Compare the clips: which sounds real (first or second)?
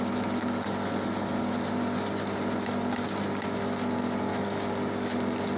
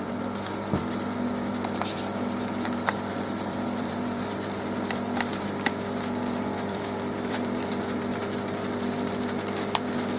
first